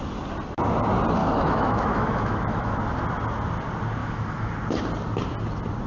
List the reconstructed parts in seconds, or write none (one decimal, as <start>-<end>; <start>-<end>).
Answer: 1.2-2.8; 4.0-4.5